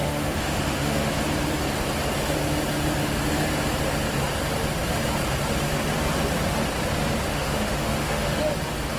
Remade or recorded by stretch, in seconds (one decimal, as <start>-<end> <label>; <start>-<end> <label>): 0.0-1.1 remade; 1.1-7.3 recorded; 7.3-8.4 remade; 8.4-9.0 recorded